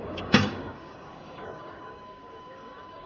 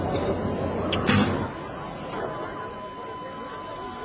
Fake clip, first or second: first